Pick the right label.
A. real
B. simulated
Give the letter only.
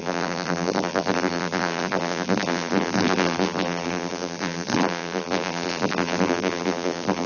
B